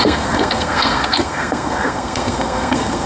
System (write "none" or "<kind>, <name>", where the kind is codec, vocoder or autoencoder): codec, SNAC